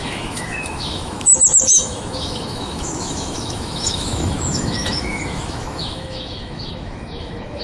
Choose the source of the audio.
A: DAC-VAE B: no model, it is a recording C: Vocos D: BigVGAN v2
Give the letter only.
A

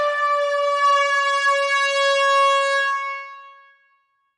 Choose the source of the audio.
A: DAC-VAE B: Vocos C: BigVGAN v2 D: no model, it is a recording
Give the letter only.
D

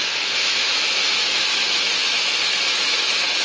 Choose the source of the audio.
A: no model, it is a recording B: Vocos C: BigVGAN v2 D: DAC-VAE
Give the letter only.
D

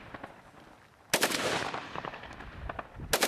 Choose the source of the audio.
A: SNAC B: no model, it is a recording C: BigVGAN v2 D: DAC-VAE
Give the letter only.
B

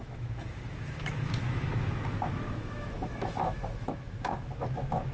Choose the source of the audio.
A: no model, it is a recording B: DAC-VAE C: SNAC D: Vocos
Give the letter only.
B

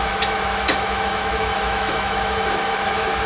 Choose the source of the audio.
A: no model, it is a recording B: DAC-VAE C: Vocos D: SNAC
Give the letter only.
B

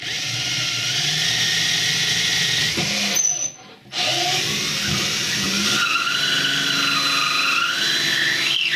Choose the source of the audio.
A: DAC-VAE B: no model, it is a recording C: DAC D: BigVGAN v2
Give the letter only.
B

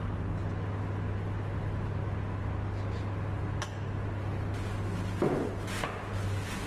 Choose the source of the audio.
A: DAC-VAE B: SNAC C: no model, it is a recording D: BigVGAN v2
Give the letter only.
C